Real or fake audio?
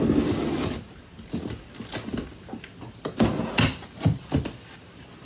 real